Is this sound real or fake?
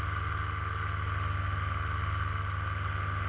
real